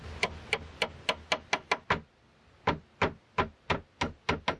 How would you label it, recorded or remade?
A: recorded